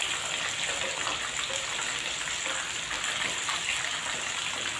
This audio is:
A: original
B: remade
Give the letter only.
A